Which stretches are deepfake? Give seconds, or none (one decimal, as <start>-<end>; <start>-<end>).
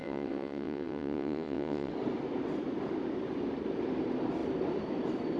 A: 0.0-1.9